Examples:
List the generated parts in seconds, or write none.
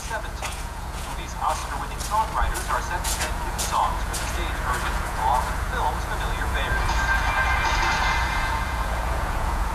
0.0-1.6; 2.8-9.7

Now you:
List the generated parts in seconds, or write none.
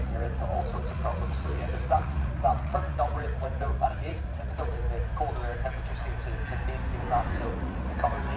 0.0-4.7; 7.3-8.4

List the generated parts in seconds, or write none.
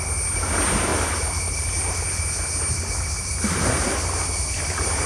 none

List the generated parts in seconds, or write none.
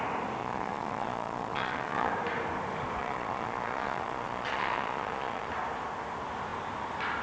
0.4-2.1; 3.0-5.5